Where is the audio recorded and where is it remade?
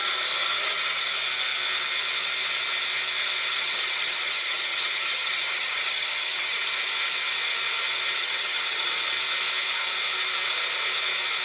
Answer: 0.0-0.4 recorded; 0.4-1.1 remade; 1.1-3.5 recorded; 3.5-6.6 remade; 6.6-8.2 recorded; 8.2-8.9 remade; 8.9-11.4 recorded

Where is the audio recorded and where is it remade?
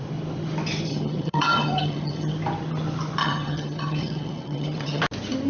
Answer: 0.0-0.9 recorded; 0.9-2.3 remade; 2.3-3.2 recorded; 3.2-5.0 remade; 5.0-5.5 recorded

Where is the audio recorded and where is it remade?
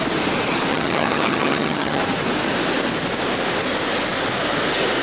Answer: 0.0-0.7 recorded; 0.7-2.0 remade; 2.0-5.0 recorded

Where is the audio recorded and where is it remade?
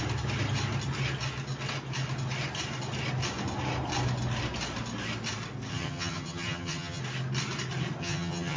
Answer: 0.0-5.7 recorded; 5.7-7.0 remade; 7.0-8.0 recorded; 8.0-8.6 remade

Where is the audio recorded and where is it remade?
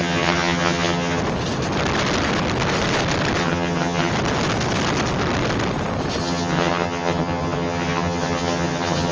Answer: 0.0-1.2 remade; 1.2-3.4 recorded; 3.4-4.1 remade; 4.1-6.2 recorded; 6.2-9.1 remade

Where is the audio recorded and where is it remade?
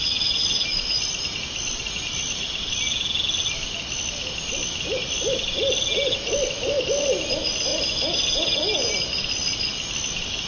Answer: 0.0-10.5 recorded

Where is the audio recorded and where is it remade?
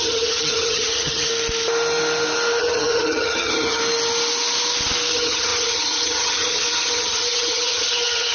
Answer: 0.0-1.3 remade; 1.3-2.6 recorded; 2.6-3.8 remade; 3.8-5.1 recorded; 5.1-8.3 remade